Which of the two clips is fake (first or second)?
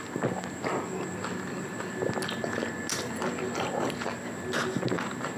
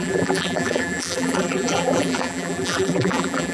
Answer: second